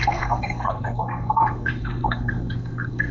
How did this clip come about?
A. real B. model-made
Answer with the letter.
B